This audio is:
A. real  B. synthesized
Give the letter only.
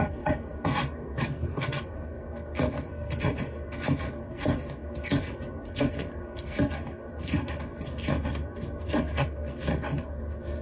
B